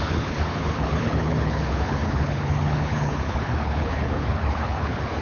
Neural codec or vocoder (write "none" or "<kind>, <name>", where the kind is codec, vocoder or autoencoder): codec, HILCodec